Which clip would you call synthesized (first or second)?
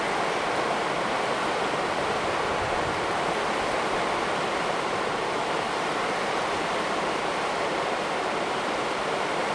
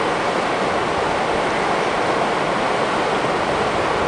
first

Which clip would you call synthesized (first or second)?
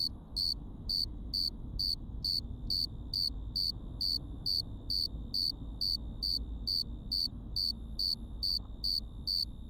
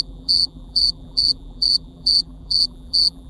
second